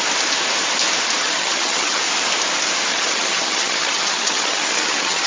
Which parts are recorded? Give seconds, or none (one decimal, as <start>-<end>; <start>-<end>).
0.0-1.2; 2.0-2.9